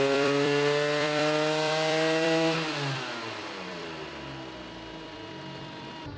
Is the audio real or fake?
fake